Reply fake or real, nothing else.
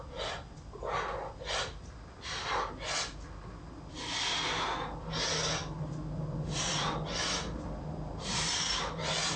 real